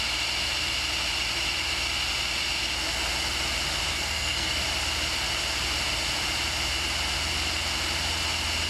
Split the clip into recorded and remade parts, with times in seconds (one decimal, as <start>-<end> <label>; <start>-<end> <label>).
0.0-3.9 recorded; 3.9-4.6 remade; 4.6-8.7 recorded